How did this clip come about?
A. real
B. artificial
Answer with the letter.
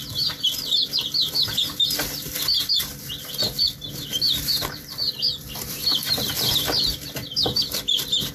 B